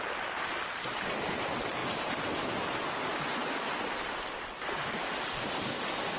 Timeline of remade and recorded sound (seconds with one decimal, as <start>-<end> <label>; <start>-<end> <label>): 0.0-6.2 recorded